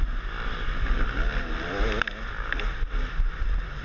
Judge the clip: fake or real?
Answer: real